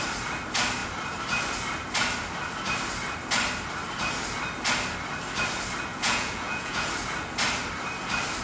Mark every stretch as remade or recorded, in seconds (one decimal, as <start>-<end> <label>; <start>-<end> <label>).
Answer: 0.0-5.9 recorded; 5.9-6.9 remade; 6.9-8.4 recorded